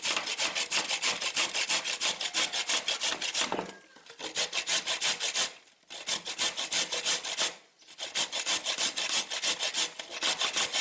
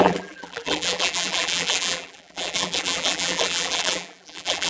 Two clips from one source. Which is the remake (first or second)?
second